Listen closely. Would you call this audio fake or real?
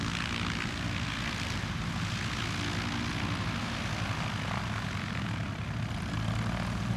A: real